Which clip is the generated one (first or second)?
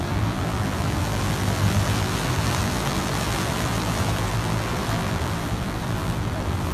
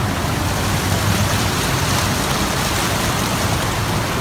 first